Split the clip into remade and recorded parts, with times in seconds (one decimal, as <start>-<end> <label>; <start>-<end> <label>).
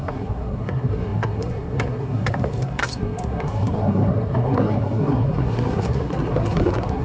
0.0-7.0 remade